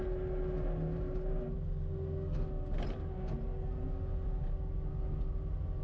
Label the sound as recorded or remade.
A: recorded